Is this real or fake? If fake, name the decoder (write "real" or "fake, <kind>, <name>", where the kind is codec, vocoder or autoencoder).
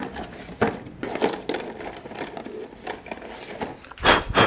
real